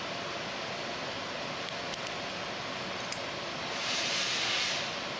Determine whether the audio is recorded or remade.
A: recorded